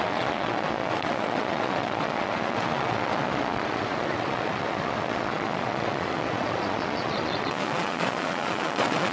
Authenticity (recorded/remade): remade